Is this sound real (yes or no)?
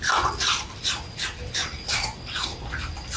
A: yes